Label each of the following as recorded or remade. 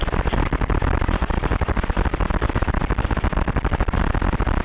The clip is recorded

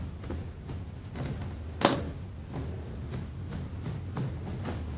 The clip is recorded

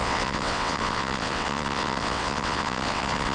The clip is remade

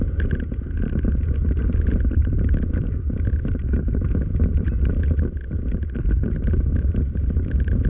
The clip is recorded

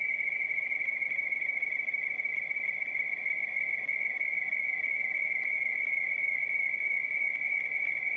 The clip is recorded